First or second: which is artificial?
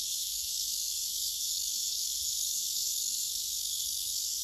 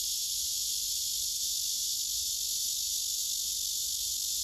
first